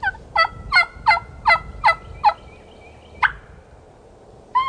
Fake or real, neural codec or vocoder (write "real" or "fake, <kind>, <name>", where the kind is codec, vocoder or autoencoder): real